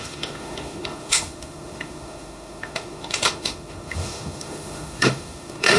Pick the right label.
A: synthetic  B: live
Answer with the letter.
A